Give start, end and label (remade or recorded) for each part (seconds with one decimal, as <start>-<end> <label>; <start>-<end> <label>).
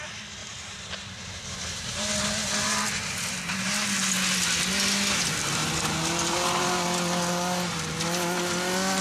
0.0-0.4 recorded; 0.4-2.8 remade; 2.8-9.0 recorded